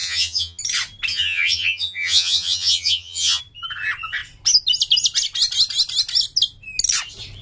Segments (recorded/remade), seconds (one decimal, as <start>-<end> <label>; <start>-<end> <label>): 0.0-0.6 remade; 0.6-1.1 recorded; 1.1-3.4 remade; 3.4-7.4 recorded